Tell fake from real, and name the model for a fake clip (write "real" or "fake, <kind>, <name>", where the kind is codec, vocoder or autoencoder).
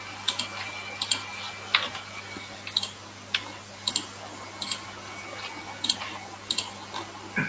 real